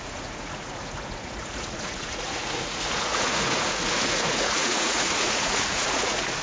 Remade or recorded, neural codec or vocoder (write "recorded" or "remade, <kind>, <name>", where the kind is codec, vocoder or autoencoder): remade, vocoder, Vocos